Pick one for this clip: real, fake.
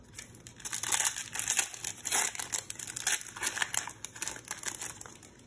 real